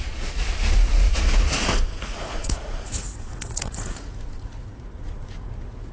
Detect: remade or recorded remade